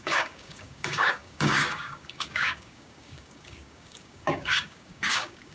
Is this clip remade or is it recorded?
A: remade